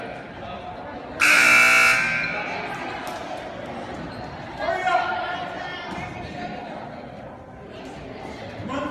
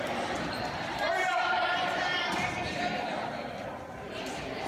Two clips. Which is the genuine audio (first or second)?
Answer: first